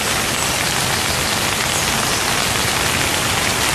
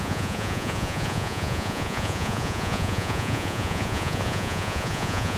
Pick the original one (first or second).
first